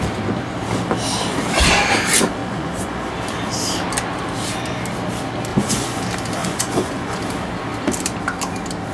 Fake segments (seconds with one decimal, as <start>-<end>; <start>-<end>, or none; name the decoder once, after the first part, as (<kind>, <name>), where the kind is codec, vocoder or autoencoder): 2.4-3.1 (vocoder, Vocos); 5.5-6.0; 6.4-7.2